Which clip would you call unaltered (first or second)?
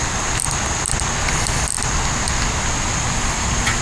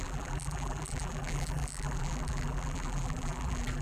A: first